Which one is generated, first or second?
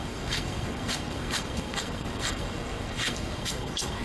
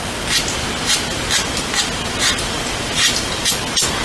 first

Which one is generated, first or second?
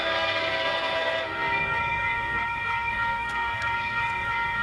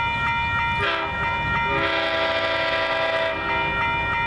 first